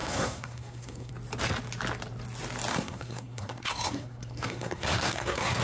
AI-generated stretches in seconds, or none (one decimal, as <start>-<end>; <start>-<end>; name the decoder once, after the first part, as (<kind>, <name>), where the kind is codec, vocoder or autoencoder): 0.0-1.1 (codec, SNAC); 2.7-5.6